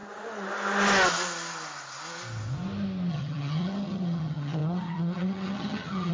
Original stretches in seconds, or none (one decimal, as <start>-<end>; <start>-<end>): 0.0-3.1